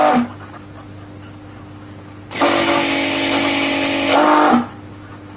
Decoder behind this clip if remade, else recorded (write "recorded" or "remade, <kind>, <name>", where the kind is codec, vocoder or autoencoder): recorded